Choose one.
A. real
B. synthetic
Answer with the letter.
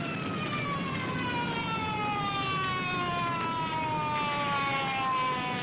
A